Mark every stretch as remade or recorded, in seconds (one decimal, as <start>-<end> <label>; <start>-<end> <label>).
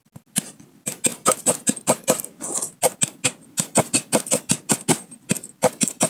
0.0-6.1 recorded